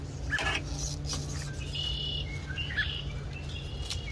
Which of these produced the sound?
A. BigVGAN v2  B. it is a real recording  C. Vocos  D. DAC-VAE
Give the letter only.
B